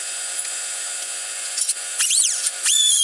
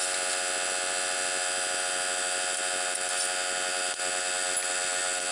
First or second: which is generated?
first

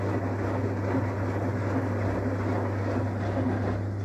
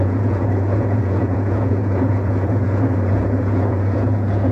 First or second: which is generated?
second